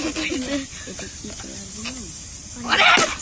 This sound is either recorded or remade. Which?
recorded